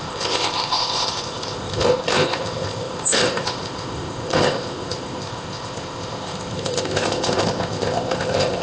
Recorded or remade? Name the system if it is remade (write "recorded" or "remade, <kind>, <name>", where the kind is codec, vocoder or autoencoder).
remade, codec, ZipCodec